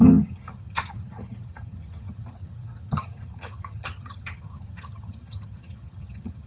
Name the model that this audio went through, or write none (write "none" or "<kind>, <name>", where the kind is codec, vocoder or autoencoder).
vocoder, HiFi-GAN